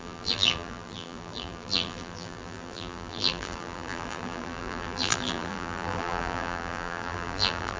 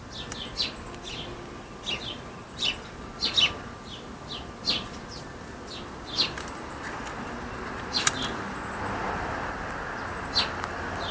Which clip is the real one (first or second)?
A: second